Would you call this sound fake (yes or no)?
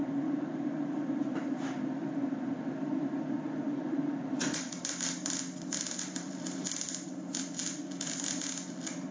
yes